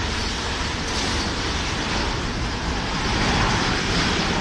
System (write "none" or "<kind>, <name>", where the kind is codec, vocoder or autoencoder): none